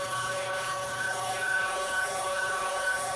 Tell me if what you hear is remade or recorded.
remade